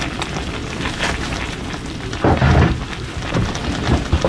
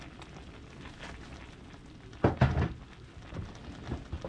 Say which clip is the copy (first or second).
first